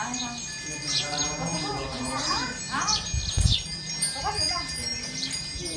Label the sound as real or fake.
real